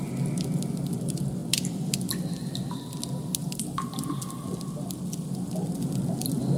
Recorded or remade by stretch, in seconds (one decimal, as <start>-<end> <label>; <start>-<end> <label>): 0.0-6.6 recorded